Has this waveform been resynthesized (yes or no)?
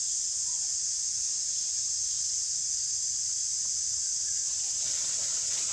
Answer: no